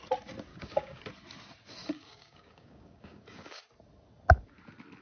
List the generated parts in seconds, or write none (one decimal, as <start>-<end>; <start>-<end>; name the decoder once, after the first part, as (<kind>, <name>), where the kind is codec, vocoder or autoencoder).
0.5-1.0 (codec, DAC); 1.8-3.6